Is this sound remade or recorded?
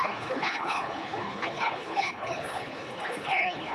remade